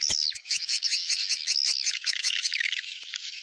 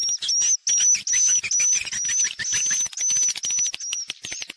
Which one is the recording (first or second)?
second